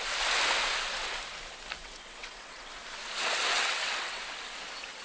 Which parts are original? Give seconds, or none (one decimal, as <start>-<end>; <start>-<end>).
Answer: 0.0-1.8; 2.7-3.5; 4.2-5.0